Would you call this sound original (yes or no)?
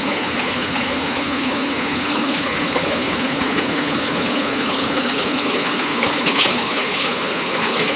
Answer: no